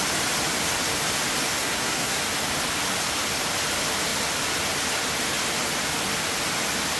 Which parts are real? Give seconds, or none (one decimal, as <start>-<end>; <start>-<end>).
0.0-1.6; 2.2-7.0